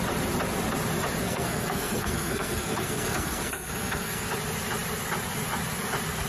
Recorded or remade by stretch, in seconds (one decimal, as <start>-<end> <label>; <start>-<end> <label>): 0.0-1.2 recorded; 1.2-4.3 remade; 4.3-6.3 recorded